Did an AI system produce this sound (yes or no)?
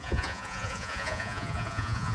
yes